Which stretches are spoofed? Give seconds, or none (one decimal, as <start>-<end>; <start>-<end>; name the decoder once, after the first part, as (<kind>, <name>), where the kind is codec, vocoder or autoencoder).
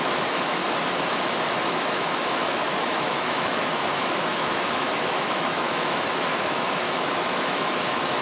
0.0-0.6 (autoencoder, DAC-VAE); 1.2-8.2